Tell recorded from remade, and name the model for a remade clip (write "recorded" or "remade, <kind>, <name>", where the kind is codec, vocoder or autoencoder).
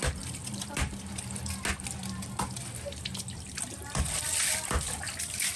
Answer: recorded